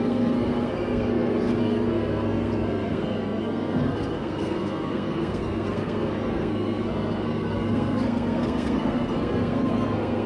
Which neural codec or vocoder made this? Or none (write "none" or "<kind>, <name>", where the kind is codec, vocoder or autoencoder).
codec, SNAC